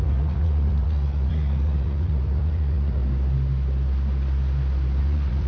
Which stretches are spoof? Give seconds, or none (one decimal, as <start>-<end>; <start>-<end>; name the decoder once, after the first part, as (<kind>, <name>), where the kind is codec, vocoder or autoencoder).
0.0-3.0 (vocoder, Vocos); 5.0-5.5